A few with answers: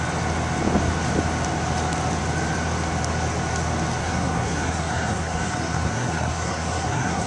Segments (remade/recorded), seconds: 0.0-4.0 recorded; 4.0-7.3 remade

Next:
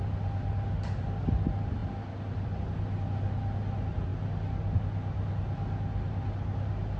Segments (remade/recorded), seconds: 0.0-7.0 recorded